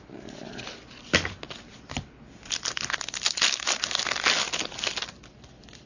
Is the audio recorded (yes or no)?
yes